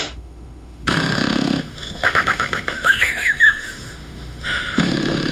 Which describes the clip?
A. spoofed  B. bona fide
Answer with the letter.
A